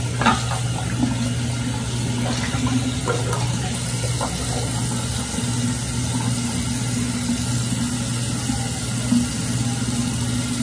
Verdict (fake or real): real